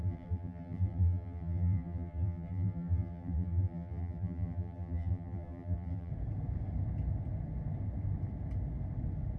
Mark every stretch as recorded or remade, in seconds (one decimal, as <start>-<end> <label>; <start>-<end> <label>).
0.0-6.1 remade; 6.1-9.4 recorded

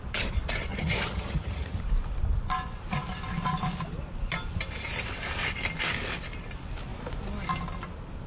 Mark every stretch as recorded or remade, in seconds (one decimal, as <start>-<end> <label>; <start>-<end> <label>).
0.0-0.7 recorded; 0.7-1.8 remade; 1.8-8.3 recorded

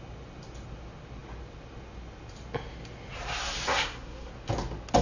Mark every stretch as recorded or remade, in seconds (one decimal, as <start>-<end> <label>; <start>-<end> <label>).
0.0-3.7 recorded; 3.7-4.3 remade; 4.3-5.0 recorded

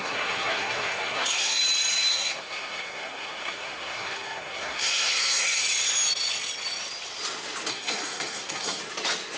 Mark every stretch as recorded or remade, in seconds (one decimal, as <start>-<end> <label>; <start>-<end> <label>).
0.0-1.6 remade; 1.6-2.1 recorded; 2.1-5.6 remade; 5.6-7.7 recorded; 7.7-8.8 remade; 8.8-9.4 recorded

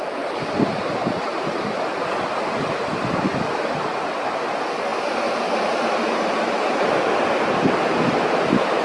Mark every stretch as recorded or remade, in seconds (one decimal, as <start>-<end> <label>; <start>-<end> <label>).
0.0-8.8 recorded

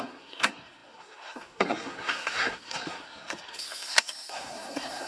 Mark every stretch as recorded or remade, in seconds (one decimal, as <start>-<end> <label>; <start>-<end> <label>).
0.0-5.1 remade